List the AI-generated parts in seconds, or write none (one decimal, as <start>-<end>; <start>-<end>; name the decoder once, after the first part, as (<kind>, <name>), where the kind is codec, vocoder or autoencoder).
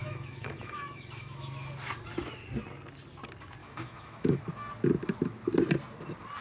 0.0-1.5 (autoencoder, DAC-VAE); 3.6-4.4